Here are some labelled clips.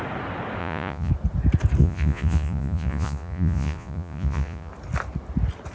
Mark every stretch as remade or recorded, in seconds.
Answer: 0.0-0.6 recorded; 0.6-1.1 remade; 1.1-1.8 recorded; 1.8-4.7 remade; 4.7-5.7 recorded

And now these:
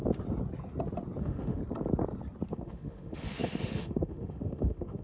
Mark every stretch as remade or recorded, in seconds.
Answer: 0.0-1.2 recorded; 1.2-1.6 remade; 1.6-2.5 recorded; 2.5-5.0 remade

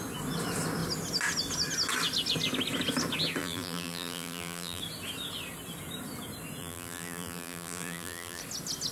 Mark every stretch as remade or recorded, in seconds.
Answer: 0.0-3.4 recorded; 3.4-4.8 remade; 4.8-6.6 recorded; 6.6-8.4 remade; 8.4-8.9 recorded

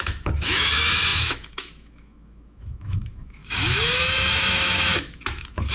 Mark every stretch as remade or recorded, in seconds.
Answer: 0.0-5.7 remade

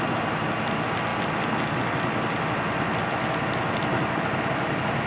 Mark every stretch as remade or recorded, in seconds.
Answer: 0.0-5.1 recorded

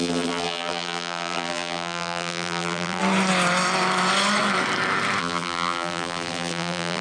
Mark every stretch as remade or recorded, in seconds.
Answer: 0.0-3.0 remade; 3.0-5.2 recorded; 5.2-7.0 remade

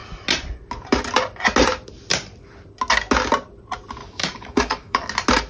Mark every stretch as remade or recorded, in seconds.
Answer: 0.0-4.0 recorded; 4.0-5.1 remade; 5.1-5.5 recorded